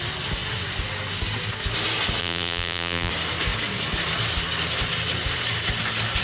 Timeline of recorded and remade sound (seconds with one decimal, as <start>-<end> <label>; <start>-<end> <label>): 0.0-2.2 recorded; 2.2-3.1 remade; 3.1-6.2 recorded